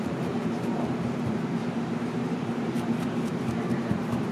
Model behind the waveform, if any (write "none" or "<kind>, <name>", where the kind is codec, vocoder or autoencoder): vocoder, BigVGAN v2